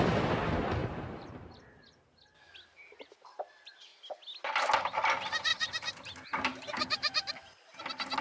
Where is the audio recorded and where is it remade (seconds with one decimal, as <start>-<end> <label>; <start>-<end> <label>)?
0.0-0.8 recorded; 0.8-1.6 remade; 1.6-5.5 recorded; 5.5-7.3 remade; 7.3-8.2 recorded